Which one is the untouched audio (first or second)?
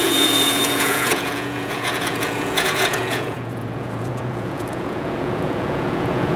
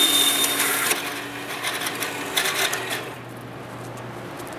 second